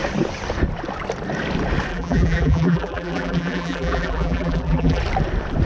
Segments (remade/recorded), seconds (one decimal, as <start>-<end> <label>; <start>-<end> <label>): 0.0-1.9 recorded; 1.9-5.0 remade; 5.0-5.7 recorded